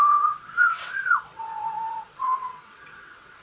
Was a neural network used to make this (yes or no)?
yes